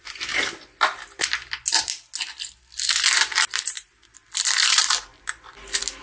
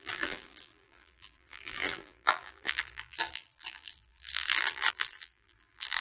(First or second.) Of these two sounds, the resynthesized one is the second